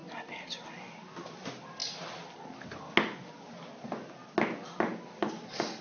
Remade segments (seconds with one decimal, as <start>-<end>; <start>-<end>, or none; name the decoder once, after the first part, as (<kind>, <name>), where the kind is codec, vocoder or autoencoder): none